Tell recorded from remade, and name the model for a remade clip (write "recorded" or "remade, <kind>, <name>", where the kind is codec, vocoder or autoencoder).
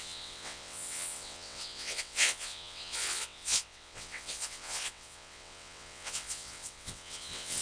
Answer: remade, vocoder, WaveNeXt